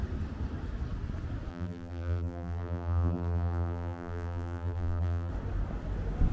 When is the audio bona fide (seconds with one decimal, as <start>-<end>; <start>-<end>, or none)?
0.0-1.5; 5.3-6.3